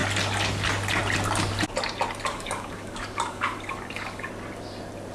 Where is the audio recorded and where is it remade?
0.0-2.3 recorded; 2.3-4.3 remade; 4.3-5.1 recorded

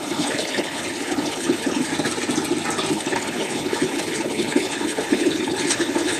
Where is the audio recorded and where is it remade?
0.0-1.9 remade; 1.9-2.9 recorded; 2.9-6.2 remade

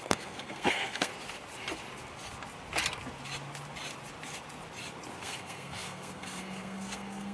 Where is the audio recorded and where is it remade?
0.0-1.1 remade; 1.1-5.2 recorded; 5.2-7.3 remade